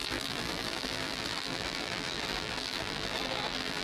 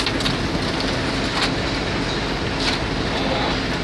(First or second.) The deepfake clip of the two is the first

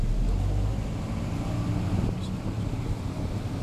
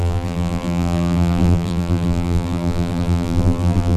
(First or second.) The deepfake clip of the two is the second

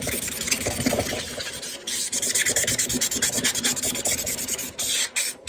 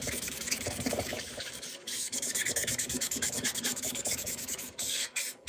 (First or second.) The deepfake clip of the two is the second